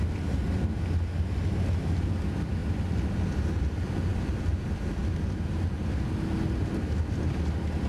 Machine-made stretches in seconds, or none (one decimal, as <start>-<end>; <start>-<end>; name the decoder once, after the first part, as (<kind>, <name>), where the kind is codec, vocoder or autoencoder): 2.6-3.6 (vocoder, BigVGAN v2); 4.1-4.6